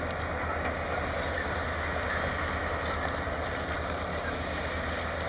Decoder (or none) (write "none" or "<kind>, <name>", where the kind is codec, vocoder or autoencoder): none